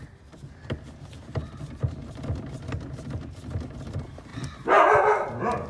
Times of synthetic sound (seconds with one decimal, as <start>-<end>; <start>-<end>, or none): none